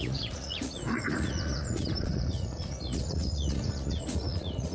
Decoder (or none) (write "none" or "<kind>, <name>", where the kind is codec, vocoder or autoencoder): vocoder, Vocos